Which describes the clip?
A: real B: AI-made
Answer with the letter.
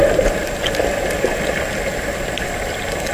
A